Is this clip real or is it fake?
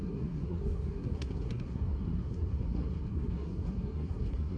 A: fake